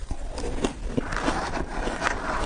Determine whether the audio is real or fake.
real